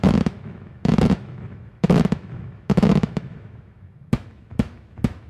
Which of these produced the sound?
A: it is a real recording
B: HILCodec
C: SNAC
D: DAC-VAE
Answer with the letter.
D